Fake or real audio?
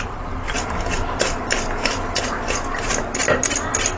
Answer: real